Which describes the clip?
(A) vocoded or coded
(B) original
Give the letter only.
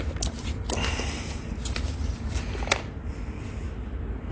B